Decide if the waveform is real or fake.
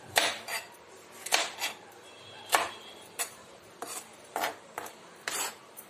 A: fake